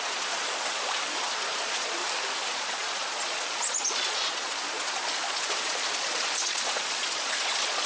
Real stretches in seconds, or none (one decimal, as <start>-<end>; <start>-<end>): 2.0-2.5